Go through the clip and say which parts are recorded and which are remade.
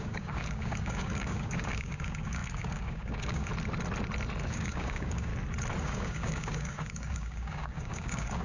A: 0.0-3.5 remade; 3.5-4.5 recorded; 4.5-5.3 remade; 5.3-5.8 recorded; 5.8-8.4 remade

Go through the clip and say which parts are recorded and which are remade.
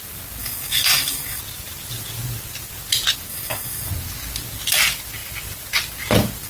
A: 0.0-0.4 recorded; 0.4-1.4 remade; 1.4-3.3 recorded; 3.3-3.9 remade; 3.9-6.5 recorded